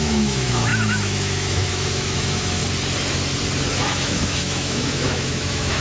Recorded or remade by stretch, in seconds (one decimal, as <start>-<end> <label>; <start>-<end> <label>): 0.0-2.6 remade; 2.6-3.7 recorded; 3.7-5.8 remade